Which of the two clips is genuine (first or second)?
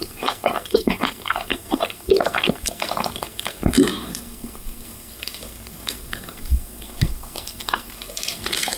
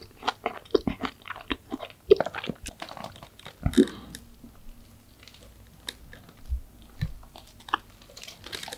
second